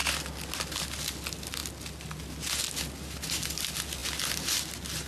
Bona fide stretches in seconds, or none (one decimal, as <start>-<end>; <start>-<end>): 0.0-5.1